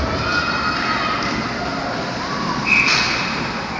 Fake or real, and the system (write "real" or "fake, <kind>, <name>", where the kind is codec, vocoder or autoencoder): real